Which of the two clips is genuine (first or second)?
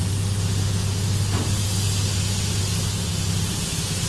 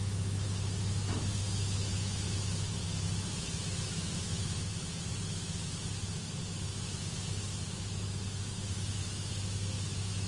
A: first